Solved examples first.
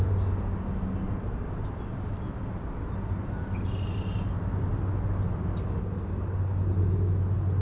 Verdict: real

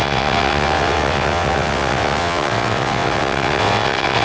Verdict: fake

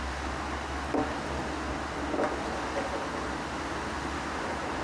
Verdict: real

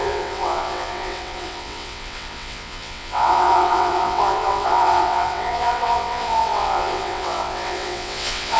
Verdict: fake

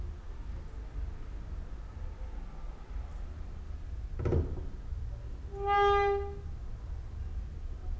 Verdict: real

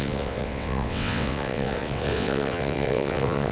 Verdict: fake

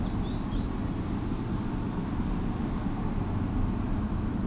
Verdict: real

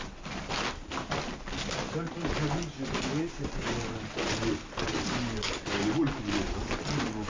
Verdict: real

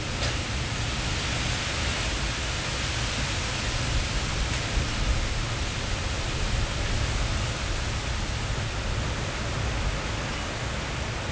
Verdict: real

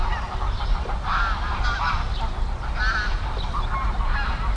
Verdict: real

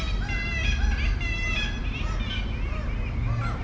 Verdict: real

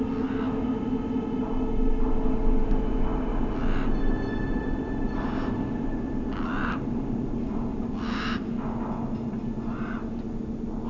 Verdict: real